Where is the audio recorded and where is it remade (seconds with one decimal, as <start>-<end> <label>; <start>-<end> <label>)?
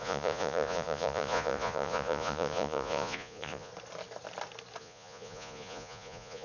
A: 0.0-3.7 remade; 3.7-4.8 recorded; 4.8-6.4 remade